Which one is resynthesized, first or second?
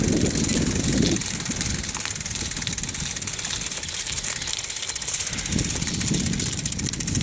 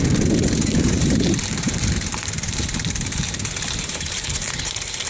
second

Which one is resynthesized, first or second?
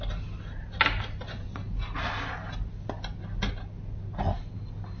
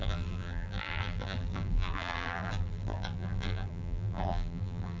second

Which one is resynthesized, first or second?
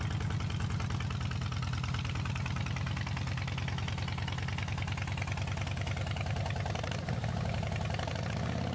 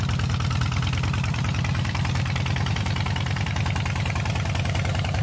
second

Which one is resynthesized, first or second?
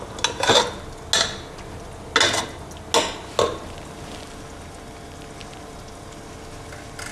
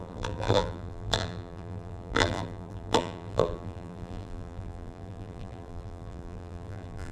second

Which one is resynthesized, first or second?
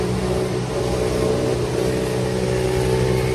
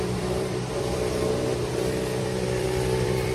second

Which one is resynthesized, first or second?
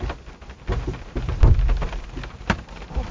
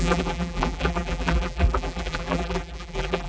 second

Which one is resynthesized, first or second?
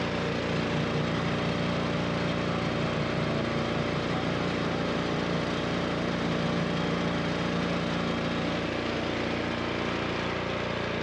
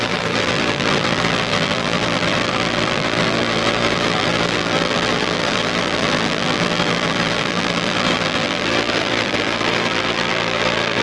second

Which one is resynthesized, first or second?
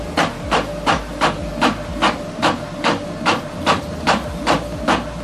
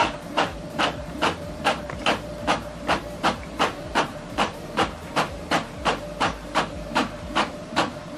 second